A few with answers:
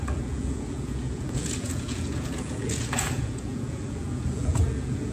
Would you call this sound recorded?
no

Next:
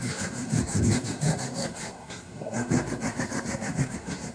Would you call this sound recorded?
no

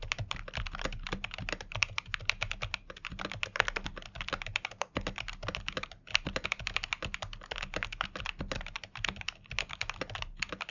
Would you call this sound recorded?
yes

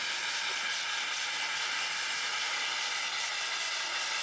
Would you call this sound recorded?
yes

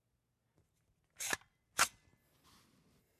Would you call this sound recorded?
yes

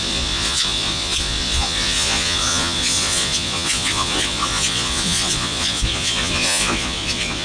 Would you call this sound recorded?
no